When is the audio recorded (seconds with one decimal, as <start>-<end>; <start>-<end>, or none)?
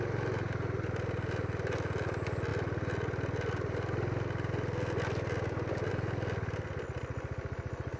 0.0-8.0